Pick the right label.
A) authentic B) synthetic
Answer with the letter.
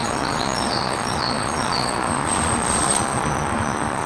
B